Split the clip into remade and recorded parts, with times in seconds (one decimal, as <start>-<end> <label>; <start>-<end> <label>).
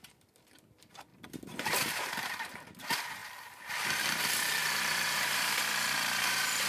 0.0-1.1 recorded; 1.1-2.1 remade; 2.1-4.6 recorded; 4.6-6.7 remade